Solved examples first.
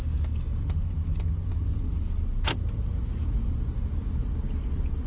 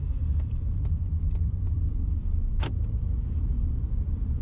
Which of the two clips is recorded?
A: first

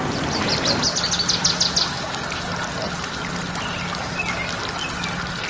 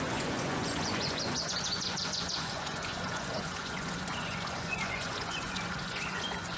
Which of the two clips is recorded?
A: first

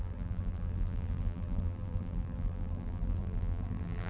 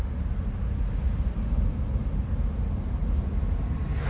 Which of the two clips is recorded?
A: second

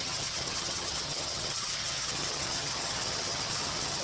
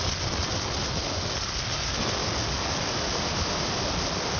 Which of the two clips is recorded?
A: second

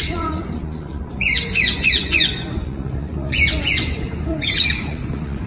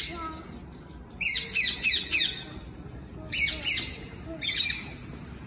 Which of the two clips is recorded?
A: second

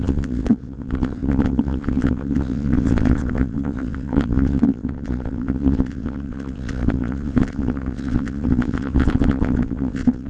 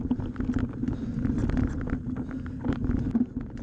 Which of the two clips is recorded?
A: second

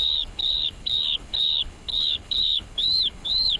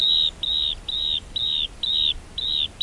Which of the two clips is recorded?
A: second